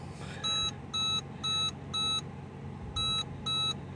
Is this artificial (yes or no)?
no